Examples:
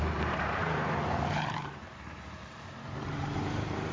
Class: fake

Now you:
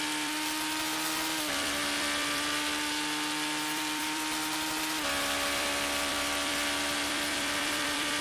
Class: fake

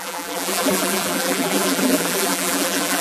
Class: fake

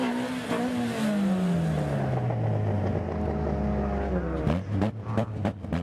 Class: real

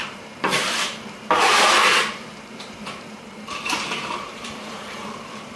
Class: fake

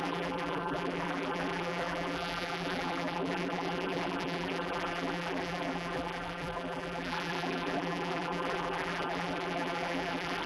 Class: fake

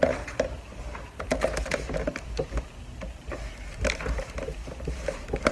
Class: fake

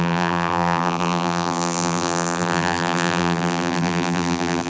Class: fake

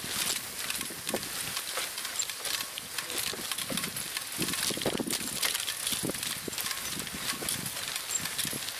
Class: real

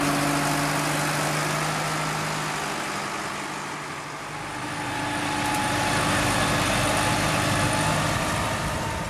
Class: real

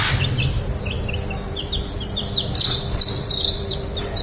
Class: fake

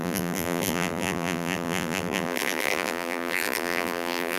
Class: fake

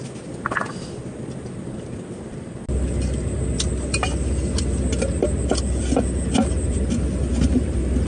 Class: real